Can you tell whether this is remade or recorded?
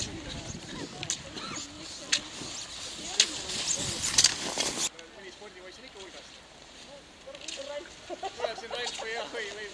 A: recorded